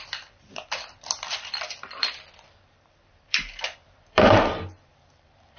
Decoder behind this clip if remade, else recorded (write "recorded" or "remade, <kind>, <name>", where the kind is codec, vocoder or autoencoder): remade, vocoder, BigVGAN v2